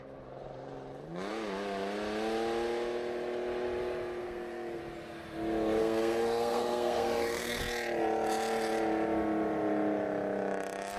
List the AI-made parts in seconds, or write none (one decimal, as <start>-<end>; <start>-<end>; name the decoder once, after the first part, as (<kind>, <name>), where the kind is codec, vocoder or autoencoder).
4.2-4.8 (codec, SNAC); 5.8-7.6